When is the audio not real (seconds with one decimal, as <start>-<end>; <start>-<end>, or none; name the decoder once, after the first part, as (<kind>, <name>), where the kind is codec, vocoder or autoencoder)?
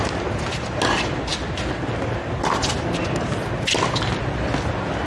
none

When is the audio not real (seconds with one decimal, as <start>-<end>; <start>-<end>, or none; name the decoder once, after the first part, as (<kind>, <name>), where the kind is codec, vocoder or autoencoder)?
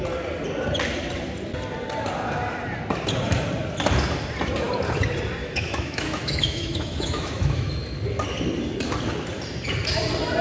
5.4-7.8 (autoencoder, DAC-VAE)